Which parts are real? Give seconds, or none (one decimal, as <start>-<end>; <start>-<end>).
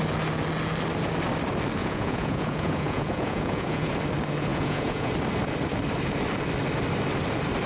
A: 0.0-1.8; 3.9-4.5; 5.1-7.7